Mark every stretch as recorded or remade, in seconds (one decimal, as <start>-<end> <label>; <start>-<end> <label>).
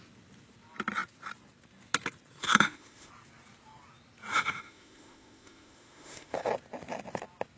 0.0-2.4 recorded; 2.4-3.1 remade; 3.1-4.3 recorded; 4.3-6.5 remade; 6.5-7.6 recorded